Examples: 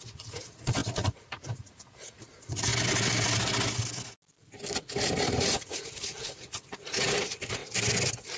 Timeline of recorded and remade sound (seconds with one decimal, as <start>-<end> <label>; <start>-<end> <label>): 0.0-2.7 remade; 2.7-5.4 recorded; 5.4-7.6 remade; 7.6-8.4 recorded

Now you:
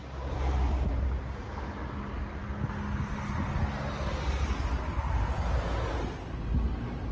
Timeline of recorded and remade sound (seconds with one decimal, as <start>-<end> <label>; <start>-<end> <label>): 0.0-0.9 remade; 0.9-7.1 recorded

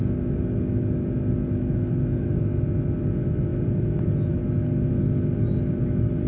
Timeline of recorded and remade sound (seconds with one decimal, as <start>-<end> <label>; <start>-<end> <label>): 0.0-3.5 recorded; 3.5-4.0 remade; 4.0-6.3 recorded

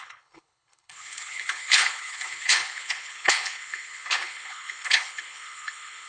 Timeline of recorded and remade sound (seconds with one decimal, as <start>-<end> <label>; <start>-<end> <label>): 0.0-6.1 remade

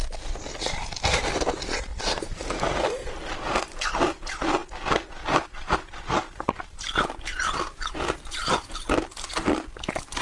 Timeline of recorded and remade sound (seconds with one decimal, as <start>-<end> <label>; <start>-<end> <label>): 0.0-1.9 recorded; 1.9-2.8 remade; 2.8-10.2 recorded